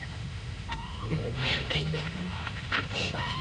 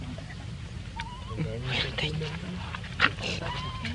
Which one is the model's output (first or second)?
first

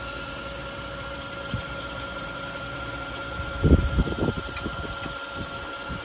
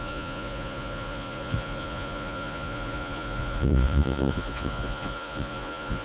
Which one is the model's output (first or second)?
second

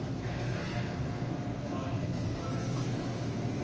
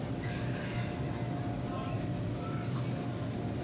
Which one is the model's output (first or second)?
first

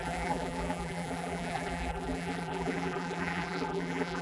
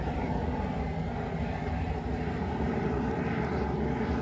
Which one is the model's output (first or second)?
first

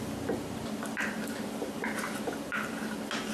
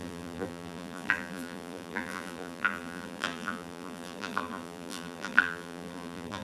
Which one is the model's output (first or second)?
second